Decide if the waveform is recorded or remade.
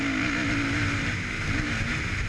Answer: recorded